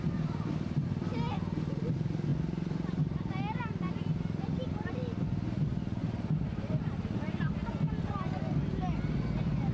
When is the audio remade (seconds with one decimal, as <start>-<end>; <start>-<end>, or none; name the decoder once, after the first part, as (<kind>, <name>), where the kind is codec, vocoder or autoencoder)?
6.0-7.5 (vocoder, BigVGAN v2)